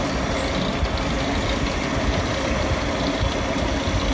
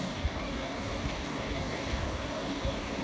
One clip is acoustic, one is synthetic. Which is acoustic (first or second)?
first